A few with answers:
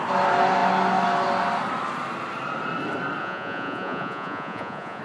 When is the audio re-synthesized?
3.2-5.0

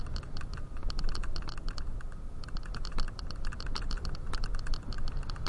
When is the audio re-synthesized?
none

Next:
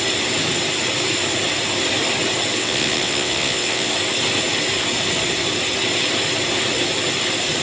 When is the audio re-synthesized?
2.6-3.9